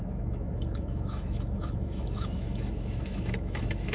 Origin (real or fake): fake